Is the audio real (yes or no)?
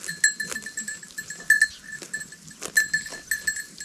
yes